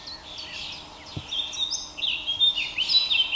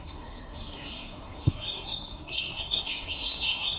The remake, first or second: second